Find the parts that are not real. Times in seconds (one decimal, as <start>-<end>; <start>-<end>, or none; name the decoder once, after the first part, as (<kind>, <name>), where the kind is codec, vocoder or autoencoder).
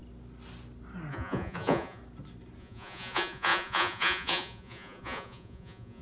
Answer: 1.1-2.0 (vocoder, Vocos); 2.6-6.0